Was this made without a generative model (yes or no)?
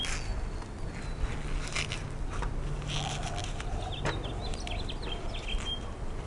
yes